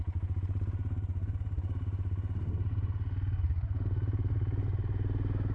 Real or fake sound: real